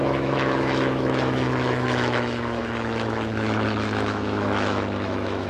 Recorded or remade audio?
remade